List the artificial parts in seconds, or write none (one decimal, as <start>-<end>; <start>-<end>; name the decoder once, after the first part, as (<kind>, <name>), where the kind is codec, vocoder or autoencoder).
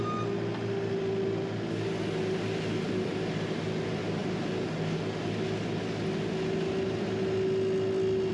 none